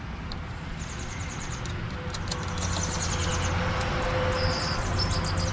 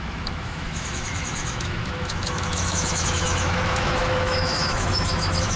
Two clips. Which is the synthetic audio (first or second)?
second